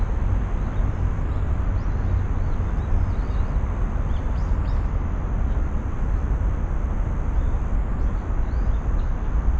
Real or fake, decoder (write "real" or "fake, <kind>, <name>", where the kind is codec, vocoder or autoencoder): real